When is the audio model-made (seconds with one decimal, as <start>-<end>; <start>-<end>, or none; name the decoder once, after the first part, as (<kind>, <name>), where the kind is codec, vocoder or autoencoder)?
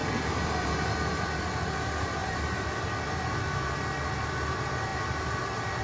2.2-4.3 (vocoder, BigVGAN v2); 4.9-5.8